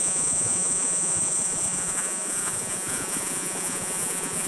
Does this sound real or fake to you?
fake